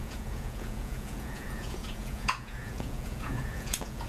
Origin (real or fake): fake